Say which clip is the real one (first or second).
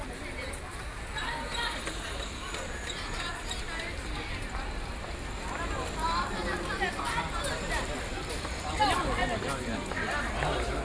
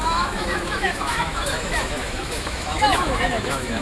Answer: first